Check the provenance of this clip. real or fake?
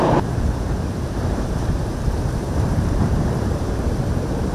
fake